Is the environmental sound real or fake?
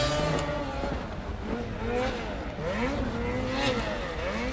real